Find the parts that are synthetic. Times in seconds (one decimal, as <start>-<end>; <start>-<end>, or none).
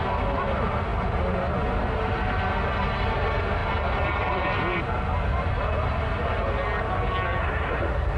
7.4-8.2